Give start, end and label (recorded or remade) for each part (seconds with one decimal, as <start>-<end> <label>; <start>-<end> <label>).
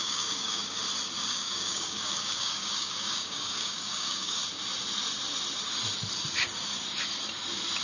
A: 0.0-0.8 remade; 0.8-1.3 recorded; 1.3-4.4 remade; 4.4-7.8 recorded